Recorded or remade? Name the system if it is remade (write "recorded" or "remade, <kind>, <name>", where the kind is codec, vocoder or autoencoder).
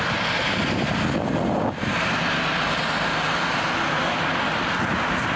recorded